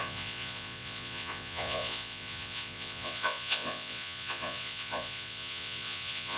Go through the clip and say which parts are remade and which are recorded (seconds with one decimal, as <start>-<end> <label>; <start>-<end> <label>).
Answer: 0.0-6.4 remade